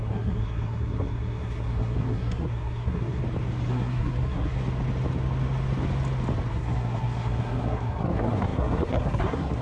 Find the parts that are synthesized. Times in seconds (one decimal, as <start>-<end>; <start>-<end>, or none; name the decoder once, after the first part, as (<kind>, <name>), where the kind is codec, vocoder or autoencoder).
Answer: 0.0-3.2 (codec, SNAC); 3.7-4.6; 6.5-9.6